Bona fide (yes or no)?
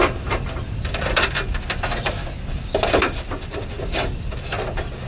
yes